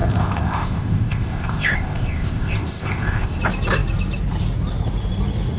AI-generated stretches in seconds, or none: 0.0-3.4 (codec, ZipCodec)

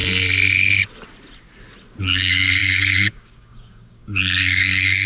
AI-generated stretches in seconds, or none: 2.0-5.1 (codec, DAC)